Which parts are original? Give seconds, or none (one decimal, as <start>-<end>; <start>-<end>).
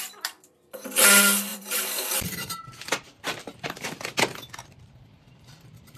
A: none